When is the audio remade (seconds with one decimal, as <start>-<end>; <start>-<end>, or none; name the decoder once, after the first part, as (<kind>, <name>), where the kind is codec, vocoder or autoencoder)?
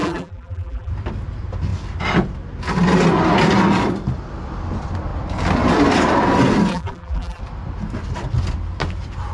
0.0-0.9 (vocoder, BigVGAN v2); 6.7-7.4